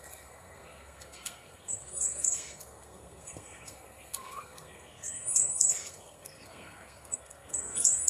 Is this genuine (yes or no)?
no